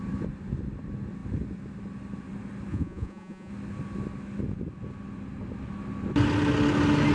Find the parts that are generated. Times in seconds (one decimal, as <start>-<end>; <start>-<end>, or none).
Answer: 2.7-3.5